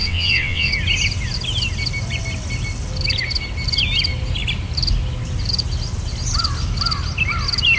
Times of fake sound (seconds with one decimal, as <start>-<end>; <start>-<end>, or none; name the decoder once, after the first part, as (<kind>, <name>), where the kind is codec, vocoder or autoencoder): 0.0-0.7 (vocoder, WaveNeXt)